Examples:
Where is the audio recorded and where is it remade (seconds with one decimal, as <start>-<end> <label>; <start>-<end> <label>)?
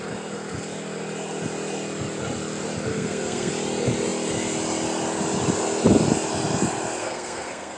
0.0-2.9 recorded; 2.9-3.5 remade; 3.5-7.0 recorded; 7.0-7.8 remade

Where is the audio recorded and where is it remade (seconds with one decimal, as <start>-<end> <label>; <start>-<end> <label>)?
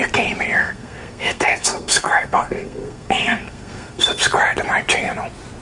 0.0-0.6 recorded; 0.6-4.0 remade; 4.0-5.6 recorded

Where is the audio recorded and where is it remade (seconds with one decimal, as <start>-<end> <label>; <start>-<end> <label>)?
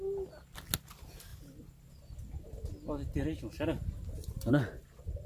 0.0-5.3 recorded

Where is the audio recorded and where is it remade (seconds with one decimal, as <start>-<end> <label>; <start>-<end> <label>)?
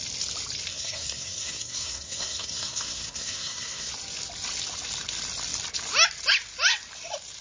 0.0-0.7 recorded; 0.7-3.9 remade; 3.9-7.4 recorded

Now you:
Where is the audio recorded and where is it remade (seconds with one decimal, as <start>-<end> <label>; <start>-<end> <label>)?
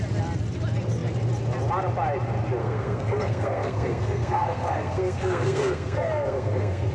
0.0-2.6 recorded; 2.6-6.9 remade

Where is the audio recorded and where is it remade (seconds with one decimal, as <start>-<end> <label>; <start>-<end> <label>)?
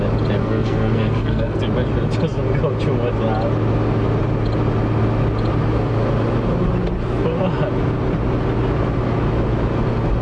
0.0-0.4 recorded; 0.4-1.6 remade; 1.6-10.2 recorded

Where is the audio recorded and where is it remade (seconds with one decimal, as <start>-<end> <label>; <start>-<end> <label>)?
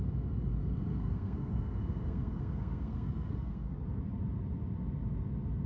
0.0-0.6 recorded; 0.6-4.0 remade; 4.0-5.7 recorded